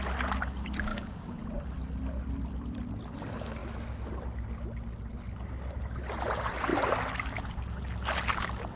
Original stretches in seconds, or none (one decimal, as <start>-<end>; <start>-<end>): 0.0-0.9; 1.4-8.8